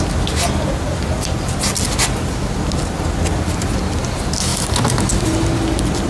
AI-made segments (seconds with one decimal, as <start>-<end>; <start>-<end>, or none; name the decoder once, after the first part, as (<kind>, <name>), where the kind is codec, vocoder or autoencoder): none